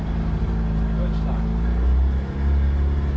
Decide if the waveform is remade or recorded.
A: recorded